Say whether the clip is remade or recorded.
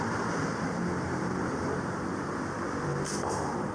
remade